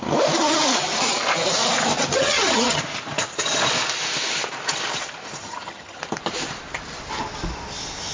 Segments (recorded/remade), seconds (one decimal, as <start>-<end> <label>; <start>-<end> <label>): 0.0-2.1 recorded; 2.1-2.8 remade; 2.8-5.4 recorded; 5.4-6.0 remade; 6.0-8.1 recorded